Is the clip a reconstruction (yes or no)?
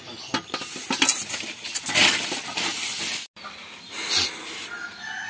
no